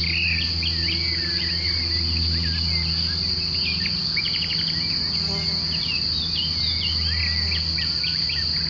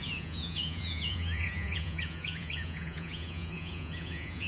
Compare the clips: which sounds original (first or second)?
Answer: first